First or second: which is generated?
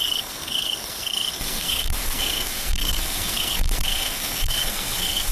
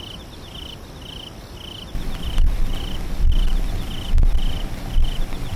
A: first